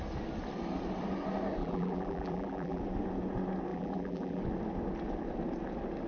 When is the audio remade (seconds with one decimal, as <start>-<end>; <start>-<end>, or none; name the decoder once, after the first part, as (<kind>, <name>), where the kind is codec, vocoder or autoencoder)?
1.6-2.8 (vocoder, BigVGAN v2); 3.7-4.4